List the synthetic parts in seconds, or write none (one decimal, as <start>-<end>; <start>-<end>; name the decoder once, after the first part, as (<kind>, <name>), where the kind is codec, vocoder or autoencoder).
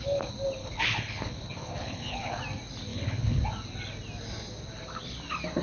0.6-2.4 (codec, HILCodec); 2.9-3.4